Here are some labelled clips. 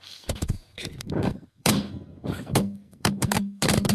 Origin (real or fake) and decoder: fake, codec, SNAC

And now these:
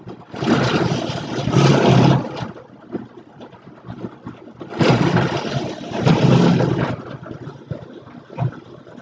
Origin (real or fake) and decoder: real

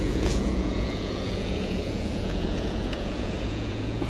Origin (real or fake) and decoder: fake, vocoder, Vocos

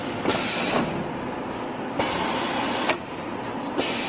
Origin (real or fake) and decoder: real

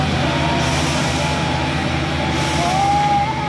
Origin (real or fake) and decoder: real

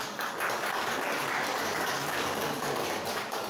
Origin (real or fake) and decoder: fake, codec, DAC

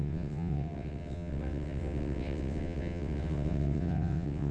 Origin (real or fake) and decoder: fake, vocoder, WaveNeXt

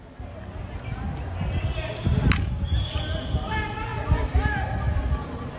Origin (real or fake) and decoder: real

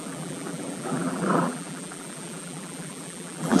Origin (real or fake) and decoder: fake, vocoder, BigVGAN v2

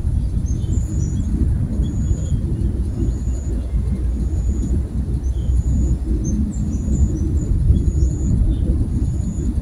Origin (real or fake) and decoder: real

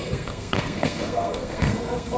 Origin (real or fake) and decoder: fake, codec, SNAC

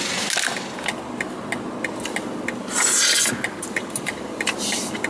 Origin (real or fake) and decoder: real